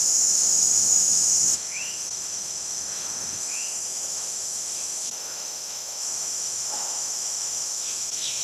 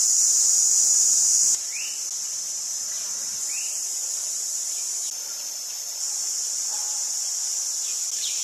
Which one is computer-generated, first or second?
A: first